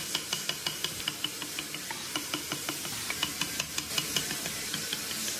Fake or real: real